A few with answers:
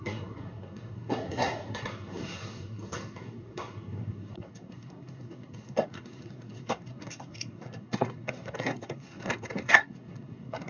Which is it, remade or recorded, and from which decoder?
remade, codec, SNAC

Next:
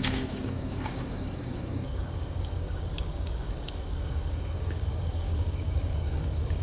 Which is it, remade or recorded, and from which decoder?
remade, codec, DAC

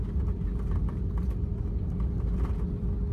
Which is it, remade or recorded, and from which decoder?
recorded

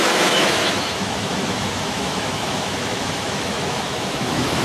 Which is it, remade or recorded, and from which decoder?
remade, autoencoder, DAC-VAE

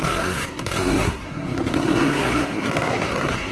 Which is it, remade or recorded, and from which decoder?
remade, codec, SNAC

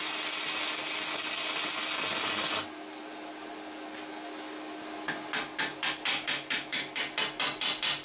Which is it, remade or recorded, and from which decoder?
recorded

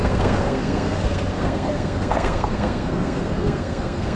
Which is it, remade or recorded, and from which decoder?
remade, codec, SNAC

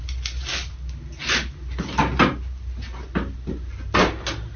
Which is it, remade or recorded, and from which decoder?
recorded